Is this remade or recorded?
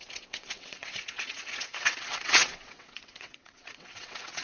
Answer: remade